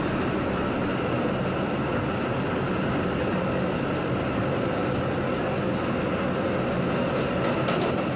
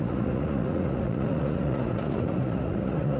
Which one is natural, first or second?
first